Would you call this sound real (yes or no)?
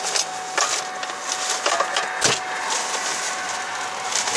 yes